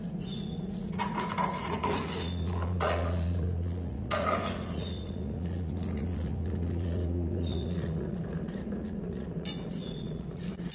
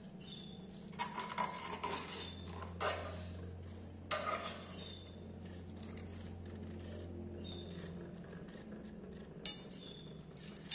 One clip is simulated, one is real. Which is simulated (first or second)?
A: first